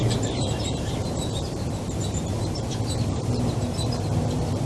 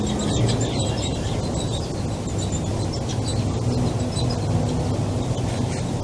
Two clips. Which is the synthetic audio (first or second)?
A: first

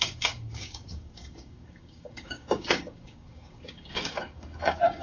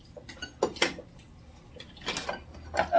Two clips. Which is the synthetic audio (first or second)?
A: first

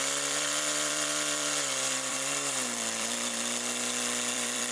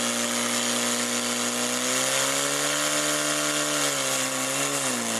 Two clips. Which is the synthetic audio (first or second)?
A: first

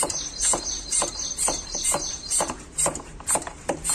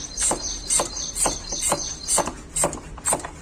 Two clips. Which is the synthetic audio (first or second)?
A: first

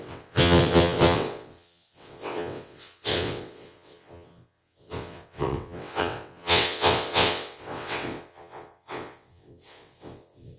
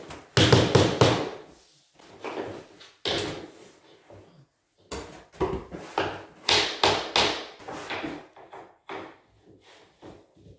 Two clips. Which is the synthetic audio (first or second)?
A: first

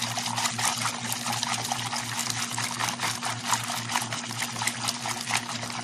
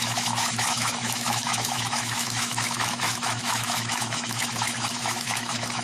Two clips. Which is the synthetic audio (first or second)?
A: second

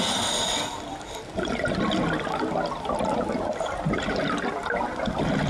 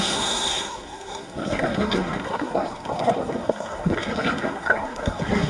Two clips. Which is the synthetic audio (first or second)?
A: second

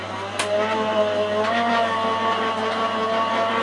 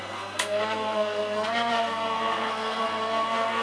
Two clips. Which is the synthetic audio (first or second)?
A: second